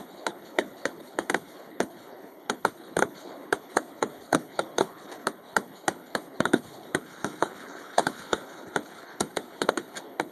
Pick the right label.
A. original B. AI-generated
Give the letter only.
B